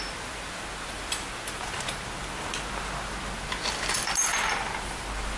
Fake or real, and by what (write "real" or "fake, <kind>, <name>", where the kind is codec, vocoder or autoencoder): real